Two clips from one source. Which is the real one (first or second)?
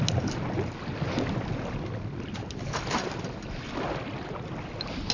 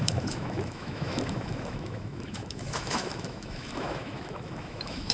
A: first